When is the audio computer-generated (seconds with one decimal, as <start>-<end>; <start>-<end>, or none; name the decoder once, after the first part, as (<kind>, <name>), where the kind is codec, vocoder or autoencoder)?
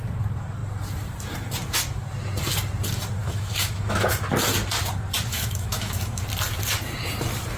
3.2-4.1 (autoencoder, DAC-VAE); 5.3-6.2